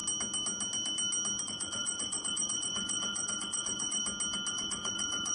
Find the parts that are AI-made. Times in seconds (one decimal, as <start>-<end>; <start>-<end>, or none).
1.4-4.0; 4.5-5.3